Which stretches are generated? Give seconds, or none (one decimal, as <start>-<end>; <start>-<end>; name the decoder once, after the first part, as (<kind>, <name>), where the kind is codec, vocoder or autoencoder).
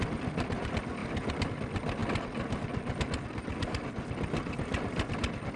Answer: none